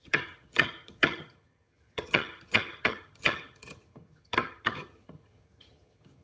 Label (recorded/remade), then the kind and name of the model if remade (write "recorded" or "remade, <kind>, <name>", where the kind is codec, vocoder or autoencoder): remade, vocoder, HiFi-GAN